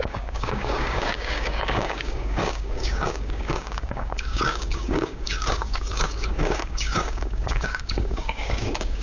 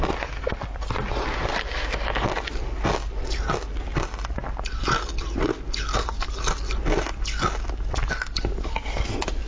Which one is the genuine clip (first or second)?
second